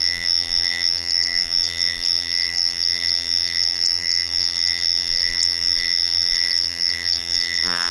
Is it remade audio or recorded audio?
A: remade